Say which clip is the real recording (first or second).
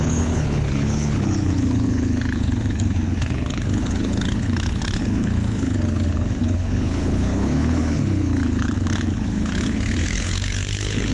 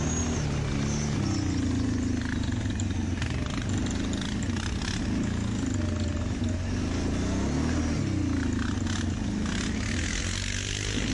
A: second